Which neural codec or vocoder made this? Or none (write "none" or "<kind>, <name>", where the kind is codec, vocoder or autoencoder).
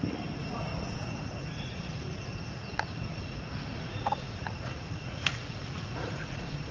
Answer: vocoder, Vocos